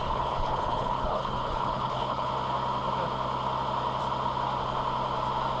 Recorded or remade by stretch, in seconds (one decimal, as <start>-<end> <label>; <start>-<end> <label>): 0.0-2.3 remade; 2.3-5.6 recorded